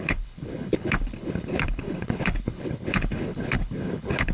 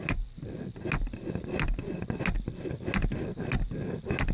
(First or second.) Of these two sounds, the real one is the second